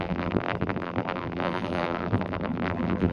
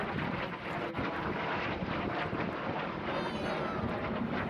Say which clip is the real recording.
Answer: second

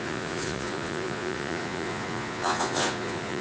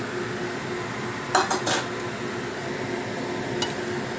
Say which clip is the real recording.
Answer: second